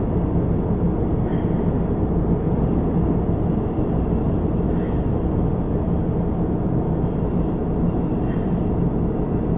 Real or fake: real